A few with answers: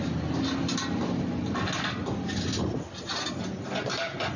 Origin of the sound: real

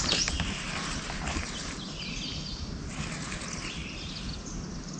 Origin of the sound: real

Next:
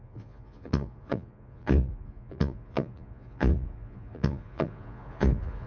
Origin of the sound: fake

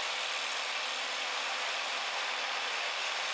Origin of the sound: real